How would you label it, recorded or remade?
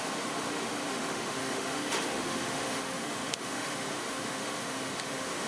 remade